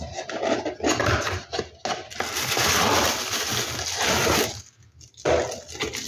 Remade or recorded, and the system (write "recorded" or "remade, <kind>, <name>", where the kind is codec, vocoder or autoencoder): recorded